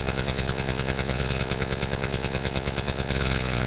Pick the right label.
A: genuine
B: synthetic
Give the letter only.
B